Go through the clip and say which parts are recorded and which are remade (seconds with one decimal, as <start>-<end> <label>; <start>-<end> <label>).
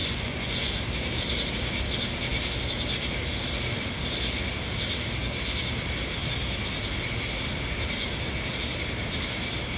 0.0-0.7 remade; 0.7-9.8 recorded